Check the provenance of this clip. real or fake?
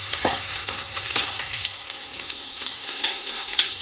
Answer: fake